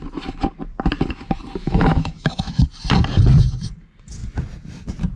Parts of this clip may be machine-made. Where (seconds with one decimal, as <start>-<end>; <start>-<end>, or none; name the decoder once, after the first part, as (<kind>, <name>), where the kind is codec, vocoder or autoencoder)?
1.6-2.6 (autoencoder, DAC-VAE)

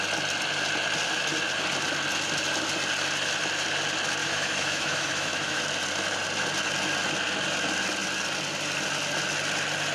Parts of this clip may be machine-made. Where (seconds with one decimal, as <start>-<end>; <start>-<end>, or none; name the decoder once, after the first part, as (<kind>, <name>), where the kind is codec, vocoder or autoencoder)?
4.2-5.6 (autoencoder, DAC-VAE)

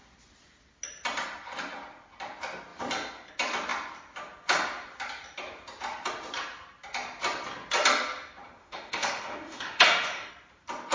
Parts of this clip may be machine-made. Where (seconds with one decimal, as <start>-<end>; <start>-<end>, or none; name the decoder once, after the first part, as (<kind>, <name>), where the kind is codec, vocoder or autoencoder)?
8.6-10.3 (autoencoder, DAC-VAE)

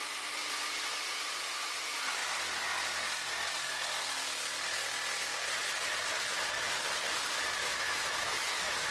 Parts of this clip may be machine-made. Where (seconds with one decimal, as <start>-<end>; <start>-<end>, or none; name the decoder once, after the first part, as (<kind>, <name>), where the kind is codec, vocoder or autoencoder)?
7.6-8.9 (autoencoder, DAC-VAE)

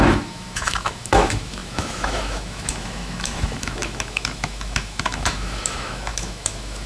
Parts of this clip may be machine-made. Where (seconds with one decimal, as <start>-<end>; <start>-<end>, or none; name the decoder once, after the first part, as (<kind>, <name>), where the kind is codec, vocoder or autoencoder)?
0.0-6.9 (autoencoder, DAC-VAE)

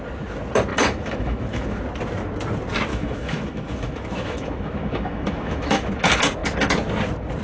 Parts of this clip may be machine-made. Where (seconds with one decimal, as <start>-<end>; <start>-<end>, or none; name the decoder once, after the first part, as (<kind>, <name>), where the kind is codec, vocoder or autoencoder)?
0.7-1.8 (autoencoder, DAC-VAE); 2.9-5.9